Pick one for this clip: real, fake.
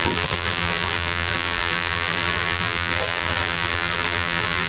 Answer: fake